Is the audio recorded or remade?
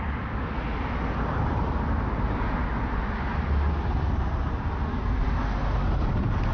recorded